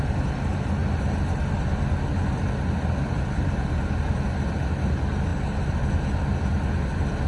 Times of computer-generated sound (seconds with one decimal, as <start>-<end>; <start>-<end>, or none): none